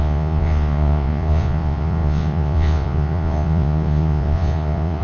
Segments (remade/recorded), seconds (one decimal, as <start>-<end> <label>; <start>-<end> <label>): 0.0-5.0 remade

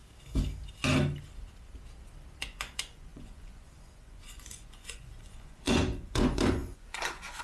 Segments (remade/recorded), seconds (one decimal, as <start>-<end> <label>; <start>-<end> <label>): 0.0-2.4 recorded; 2.4-7.4 remade

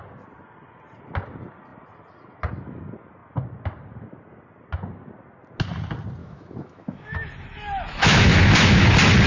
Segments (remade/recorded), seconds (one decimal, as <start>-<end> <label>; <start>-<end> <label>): 0.0-6.2 recorded; 6.2-8.9 remade; 8.9-9.3 recorded

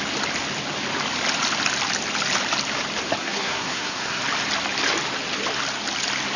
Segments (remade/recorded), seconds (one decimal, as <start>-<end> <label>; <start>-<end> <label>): 0.0-3.2 recorded; 3.2-4.2 remade; 4.2-6.4 recorded

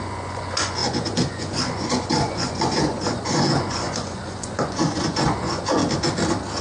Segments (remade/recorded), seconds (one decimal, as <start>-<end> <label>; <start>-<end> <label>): 0.0-5.8 remade; 5.8-6.6 recorded

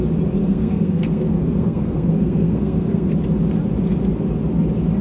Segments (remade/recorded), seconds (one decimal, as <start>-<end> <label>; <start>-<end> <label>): 0.0-0.4 recorded; 0.4-3.1 remade; 3.1-5.0 recorded

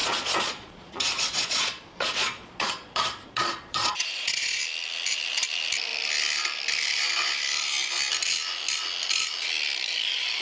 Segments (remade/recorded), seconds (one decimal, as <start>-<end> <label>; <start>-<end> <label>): 0.0-4.6 remade; 4.6-10.4 recorded

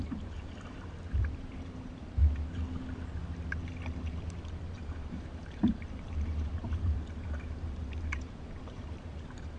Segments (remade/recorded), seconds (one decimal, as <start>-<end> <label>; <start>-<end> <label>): 0.0-2.2 remade; 2.2-4.5 recorded; 4.5-9.6 remade